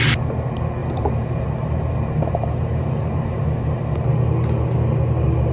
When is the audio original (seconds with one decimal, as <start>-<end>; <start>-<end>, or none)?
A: 0.0-0.8; 3.8-5.5